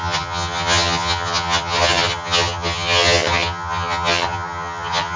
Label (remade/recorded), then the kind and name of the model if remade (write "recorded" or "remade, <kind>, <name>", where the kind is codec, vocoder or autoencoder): remade, vocoder, HiFi-GAN